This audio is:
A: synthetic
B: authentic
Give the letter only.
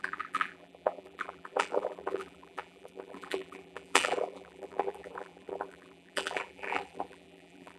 A